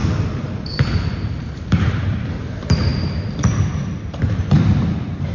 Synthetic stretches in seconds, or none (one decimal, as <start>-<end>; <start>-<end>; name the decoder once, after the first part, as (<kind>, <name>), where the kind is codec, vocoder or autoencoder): 0.0-2.9 (vocoder, BigVGAN v2); 3.5-5.3